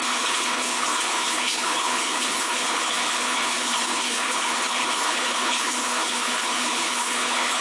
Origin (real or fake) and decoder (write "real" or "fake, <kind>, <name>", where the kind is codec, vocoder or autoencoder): fake, codec, HILCodec